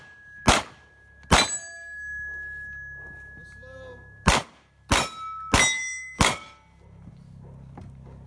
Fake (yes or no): no